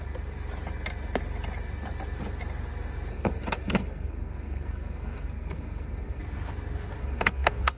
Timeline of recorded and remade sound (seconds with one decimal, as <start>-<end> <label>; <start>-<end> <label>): 0.0-3.1 recorded; 3.1-6.2 remade; 6.2-7.0 recorded; 7.0-7.8 remade